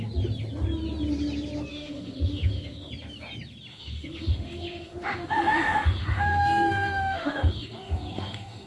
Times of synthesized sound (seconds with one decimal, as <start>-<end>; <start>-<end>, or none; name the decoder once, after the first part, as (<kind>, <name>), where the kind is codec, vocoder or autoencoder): 1.7-2.9 (autoencoder, DAC-VAE); 3.7-8.7

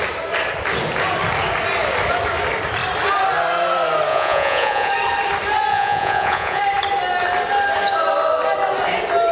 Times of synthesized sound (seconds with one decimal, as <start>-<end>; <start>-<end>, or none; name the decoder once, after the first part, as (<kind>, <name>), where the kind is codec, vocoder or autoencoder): 4.1-4.9 (vocoder, Vocos); 5.7-6.6